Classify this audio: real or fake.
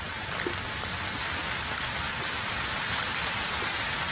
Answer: fake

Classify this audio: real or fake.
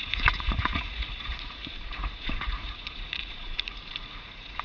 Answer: fake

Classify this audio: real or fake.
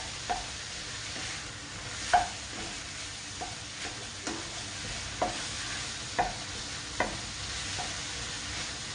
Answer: real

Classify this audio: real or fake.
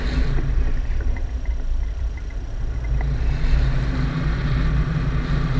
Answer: real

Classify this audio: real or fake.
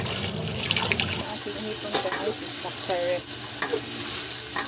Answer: real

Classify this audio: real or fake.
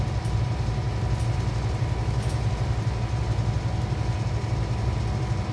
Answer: real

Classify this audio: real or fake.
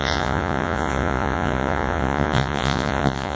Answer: fake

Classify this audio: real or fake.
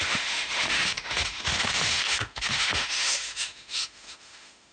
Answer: fake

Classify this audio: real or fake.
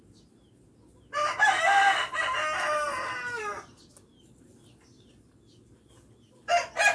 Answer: real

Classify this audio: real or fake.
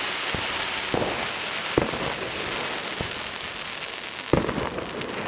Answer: real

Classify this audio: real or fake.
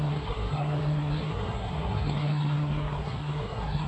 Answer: fake